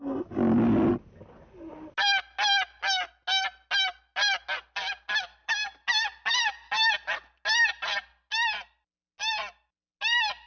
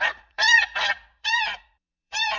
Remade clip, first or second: second